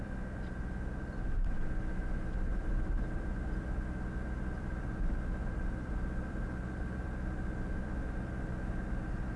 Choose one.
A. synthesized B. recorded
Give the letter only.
A